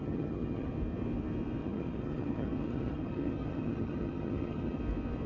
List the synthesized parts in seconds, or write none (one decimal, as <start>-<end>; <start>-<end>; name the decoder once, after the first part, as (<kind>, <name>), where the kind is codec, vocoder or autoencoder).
0.0-0.7 (vocoder, HiFi-GAN); 1.6-4.8